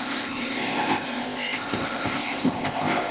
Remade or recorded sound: remade